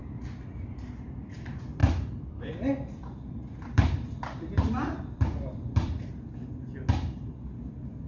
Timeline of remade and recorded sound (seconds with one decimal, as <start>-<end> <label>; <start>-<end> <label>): 0.0-1.8 recorded; 1.8-6.1 remade; 6.1-8.1 recorded